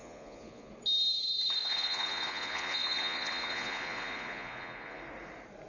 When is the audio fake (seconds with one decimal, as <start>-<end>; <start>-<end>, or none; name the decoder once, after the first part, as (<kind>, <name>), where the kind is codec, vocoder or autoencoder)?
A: 0.0-0.7 (vocoder, Vocos); 1.6-5.0